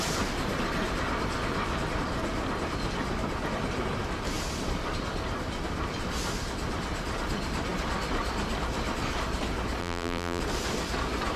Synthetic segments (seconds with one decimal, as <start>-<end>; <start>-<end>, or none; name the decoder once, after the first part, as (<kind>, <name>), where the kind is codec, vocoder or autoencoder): 9.8-10.4 (vocoder, BigVGAN v2)